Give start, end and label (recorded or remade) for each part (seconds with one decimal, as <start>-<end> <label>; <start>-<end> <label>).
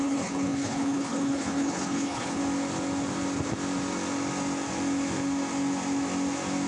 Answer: 0.0-2.4 remade; 2.4-6.7 recorded